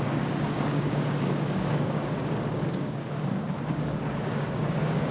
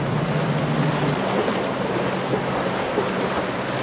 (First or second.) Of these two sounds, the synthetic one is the first